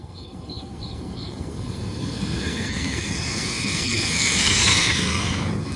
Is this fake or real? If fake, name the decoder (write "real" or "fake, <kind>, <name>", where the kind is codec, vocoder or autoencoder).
fake, codec, SNAC